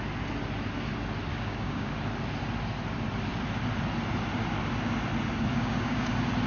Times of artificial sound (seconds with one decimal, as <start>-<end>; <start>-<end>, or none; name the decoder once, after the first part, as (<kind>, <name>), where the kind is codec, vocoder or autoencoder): 1.3-1.9 (codec, DAC); 5.5-6.1